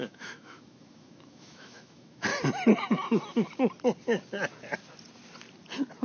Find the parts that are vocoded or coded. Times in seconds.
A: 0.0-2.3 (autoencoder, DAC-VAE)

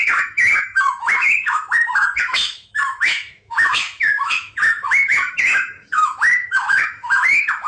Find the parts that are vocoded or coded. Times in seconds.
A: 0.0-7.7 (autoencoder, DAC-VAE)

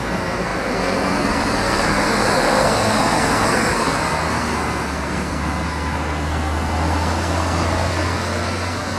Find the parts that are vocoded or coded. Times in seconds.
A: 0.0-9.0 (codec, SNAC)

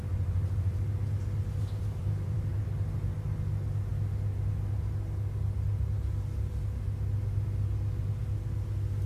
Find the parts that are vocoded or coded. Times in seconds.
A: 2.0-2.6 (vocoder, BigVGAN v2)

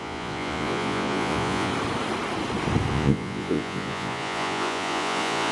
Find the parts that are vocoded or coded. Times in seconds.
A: 0.0-1.7 (vocoder, Vocos); 2.9-5.5